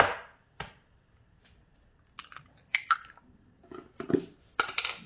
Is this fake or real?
real